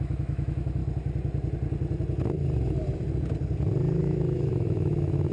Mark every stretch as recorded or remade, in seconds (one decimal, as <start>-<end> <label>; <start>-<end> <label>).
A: 0.0-0.8 remade; 0.8-4.0 recorded; 4.0-5.3 remade